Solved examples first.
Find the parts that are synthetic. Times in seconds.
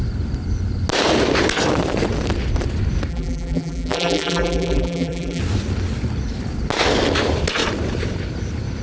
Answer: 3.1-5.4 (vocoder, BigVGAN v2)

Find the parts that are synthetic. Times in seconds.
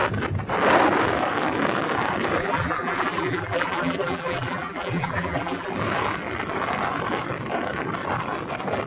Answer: 2.4-5.7 (vocoder, BigVGAN v2)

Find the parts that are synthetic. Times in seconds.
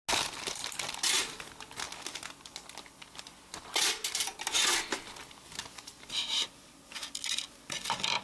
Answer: 5.6-6.8 (vocoder, BigVGAN v2)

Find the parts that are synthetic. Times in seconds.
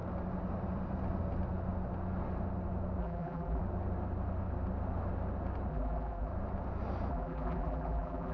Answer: 3.0-3.6 (vocoder, BigVGAN v2); 5.7-6.3; 7.1-8.3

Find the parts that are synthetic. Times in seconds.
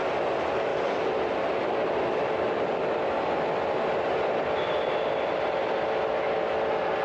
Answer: 0.7-4.9 (vocoder, BigVGAN v2)